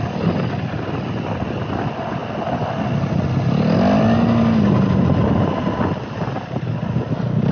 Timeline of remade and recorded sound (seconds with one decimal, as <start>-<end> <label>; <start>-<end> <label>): 0.0-7.5 recorded